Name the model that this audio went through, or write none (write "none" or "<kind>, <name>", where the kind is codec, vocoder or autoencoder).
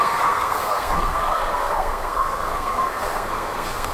codec, SNAC